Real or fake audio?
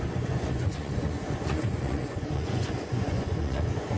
fake